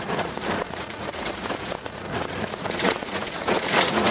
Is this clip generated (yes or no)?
yes